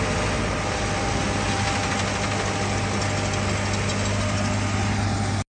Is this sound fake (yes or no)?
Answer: no